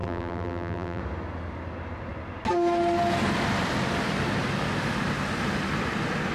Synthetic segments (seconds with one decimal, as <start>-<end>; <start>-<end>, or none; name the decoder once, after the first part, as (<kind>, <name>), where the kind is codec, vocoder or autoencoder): 0.0-1.0 (vocoder, BigVGAN v2)